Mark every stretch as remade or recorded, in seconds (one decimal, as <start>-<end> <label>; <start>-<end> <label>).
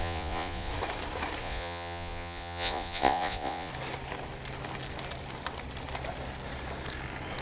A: 0.0-0.7 remade; 0.7-1.4 recorded; 1.4-3.7 remade; 3.7-7.4 recorded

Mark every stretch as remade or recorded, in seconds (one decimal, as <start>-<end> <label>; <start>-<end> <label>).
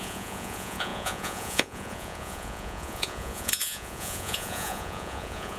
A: 0.0-5.6 remade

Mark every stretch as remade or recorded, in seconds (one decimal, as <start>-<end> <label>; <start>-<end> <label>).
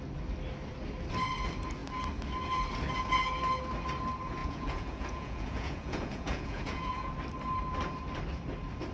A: 0.0-4.4 recorded; 4.4-7.1 remade; 7.1-8.9 recorded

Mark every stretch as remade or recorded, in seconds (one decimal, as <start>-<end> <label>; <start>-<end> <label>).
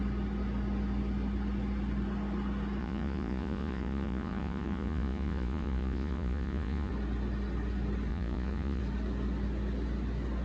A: 0.0-2.8 recorded; 2.8-6.9 remade; 6.9-8.1 recorded; 8.1-8.8 remade; 8.8-10.4 recorded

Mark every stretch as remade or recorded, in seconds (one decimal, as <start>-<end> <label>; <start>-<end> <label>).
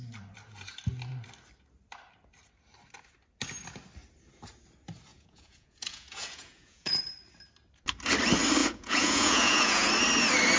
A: 0.0-5.1 recorded; 5.1-7.0 remade; 7.0-8.6 recorded; 8.6-9.9 remade; 9.9-10.6 recorded